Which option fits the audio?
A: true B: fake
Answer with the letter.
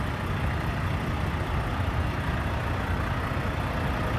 A